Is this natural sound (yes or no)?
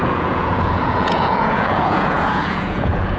no